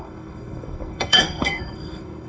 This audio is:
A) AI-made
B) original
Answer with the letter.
A